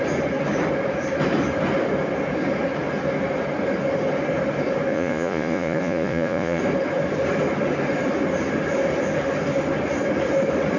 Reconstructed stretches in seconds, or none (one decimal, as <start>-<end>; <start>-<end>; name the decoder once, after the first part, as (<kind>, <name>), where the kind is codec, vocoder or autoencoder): 4.9-6.6 (vocoder, Vocos)